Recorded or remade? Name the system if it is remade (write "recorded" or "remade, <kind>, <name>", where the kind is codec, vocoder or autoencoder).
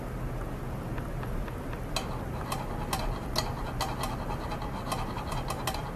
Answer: recorded